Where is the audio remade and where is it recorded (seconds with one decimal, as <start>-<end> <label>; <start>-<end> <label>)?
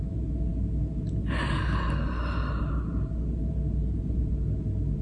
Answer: 0.0-5.0 recorded